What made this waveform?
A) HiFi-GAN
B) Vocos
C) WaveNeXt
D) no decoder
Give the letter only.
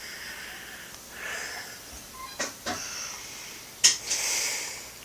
D